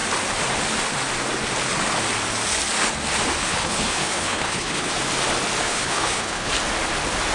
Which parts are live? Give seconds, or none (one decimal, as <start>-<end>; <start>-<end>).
0.0-3.4; 4.9-5.6; 6.5-7.3